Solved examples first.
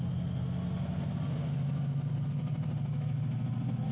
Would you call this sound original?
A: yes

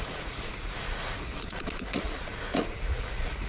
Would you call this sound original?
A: no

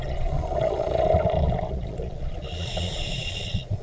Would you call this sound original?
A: no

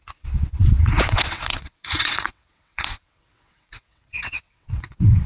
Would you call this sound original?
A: no